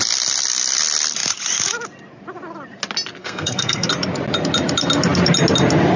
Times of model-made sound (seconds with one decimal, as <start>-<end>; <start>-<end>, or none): 3.2-3.9